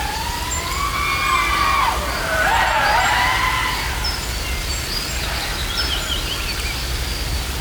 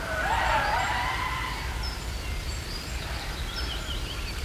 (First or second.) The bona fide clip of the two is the first